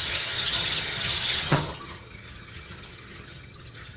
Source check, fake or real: fake